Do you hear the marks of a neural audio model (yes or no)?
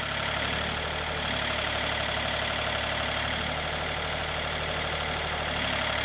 no